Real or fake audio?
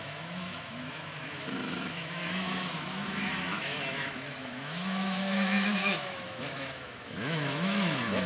fake